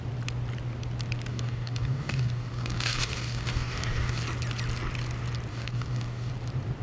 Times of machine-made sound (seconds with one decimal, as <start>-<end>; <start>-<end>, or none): 1.3-4.2; 5.5-6.3